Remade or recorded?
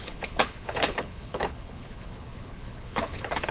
remade